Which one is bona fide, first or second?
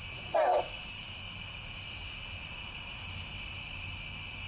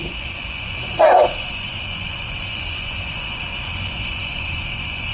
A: first